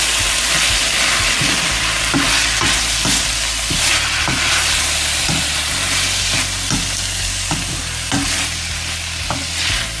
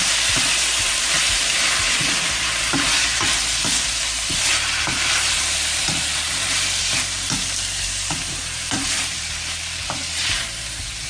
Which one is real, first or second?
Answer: first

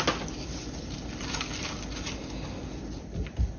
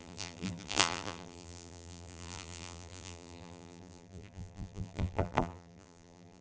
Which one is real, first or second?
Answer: first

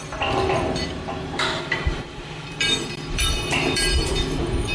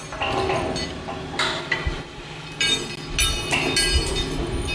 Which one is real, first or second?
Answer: second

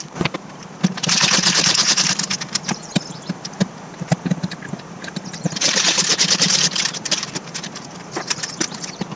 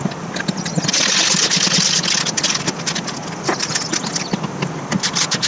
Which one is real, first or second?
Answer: second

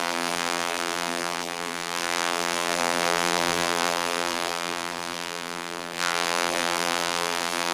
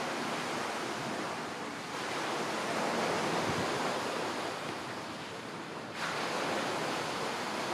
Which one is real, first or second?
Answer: second